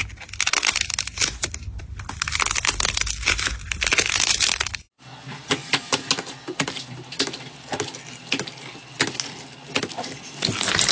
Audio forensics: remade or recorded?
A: recorded